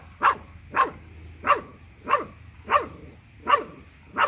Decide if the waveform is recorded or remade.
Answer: recorded